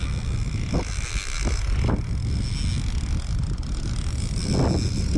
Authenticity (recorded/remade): recorded